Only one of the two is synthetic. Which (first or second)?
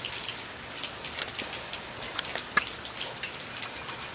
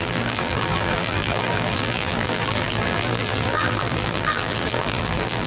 second